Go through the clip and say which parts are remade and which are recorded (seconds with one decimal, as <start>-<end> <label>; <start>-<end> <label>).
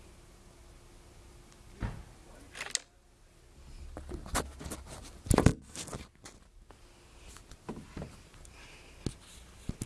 0.0-9.9 recorded